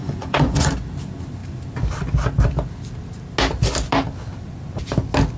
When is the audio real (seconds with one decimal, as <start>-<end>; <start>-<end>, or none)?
0.7-5.4